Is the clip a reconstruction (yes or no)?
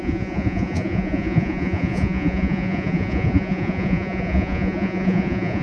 yes